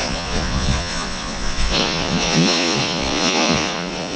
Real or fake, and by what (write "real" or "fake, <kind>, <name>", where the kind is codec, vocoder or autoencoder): fake, vocoder, Vocos